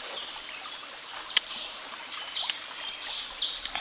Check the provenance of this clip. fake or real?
real